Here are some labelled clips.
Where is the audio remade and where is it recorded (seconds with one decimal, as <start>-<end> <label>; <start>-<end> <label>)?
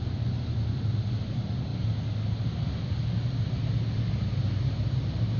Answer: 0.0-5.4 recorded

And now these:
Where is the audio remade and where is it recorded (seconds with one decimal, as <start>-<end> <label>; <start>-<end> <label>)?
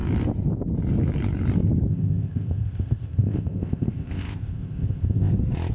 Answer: 0.0-1.9 recorded; 1.9-5.3 remade; 5.3-5.7 recorded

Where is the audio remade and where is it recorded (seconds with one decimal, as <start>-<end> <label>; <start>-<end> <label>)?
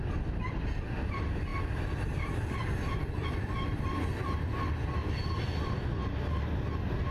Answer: 0.0-7.1 recorded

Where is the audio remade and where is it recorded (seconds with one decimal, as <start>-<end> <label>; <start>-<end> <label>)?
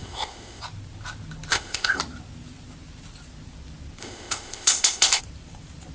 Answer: 0.0-0.6 remade; 0.6-1.5 recorded; 1.5-2.0 remade; 2.0-4.0 recorded; 4.0-5.2 remade; 5.2-5.9 recorded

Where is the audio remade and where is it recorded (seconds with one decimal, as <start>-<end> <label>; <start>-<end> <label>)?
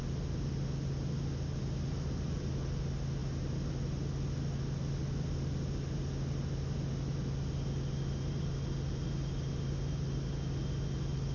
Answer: 0.0-11.3 recorded